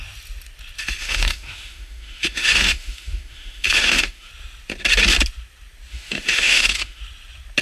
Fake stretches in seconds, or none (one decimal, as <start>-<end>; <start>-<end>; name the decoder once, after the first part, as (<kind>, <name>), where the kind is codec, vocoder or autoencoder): 1.0-4.3 (autoencoder, DAC-VAE); 5.9-7.0